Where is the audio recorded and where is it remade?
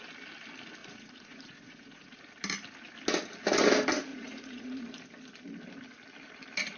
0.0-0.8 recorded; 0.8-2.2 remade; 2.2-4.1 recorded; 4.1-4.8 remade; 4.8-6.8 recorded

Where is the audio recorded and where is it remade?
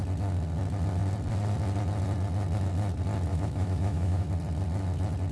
0.0-3.3 recorded; 3.3-4.3 remade; 4.3-5.3 recorded